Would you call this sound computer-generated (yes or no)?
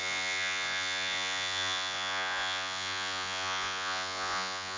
yes